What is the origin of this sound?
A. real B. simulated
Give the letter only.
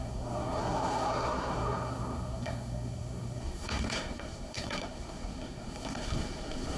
B